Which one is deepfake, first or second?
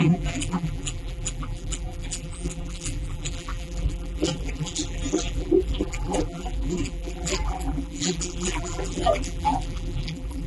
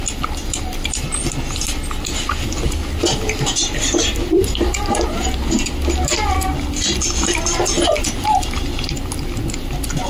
first